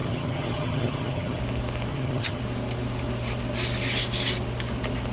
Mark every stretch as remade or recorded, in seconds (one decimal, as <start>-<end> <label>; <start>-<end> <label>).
0.0-1.4 remade; 1.4-1.9 recorded; 1.9-2.4 remade; 2.4-5.1 recorded